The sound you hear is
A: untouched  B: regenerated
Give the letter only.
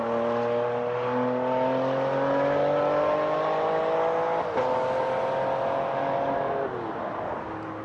A